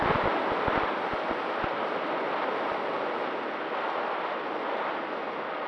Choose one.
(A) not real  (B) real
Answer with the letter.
B